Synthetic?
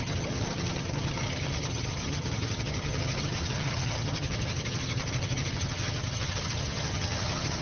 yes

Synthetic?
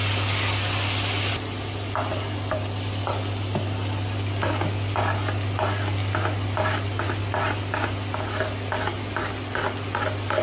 no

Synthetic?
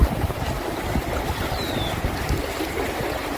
no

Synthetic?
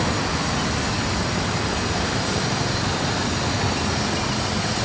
no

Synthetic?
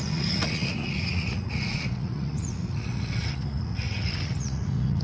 yes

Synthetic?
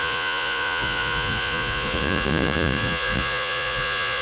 yes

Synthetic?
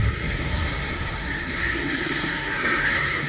yes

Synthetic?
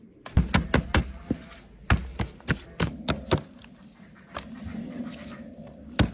no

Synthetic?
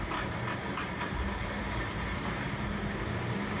yes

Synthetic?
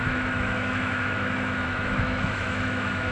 yes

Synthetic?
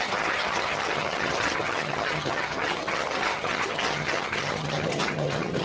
yes